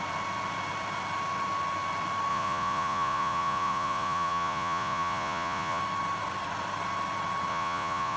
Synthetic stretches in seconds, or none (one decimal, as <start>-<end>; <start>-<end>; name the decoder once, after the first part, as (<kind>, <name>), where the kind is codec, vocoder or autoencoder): 2.3-5.8 (vocoder, Vocos); 7.5-8.2